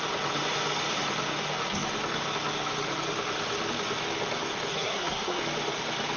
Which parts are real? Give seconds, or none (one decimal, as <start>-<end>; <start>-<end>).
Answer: 0.0-4.7; 5.4-6.2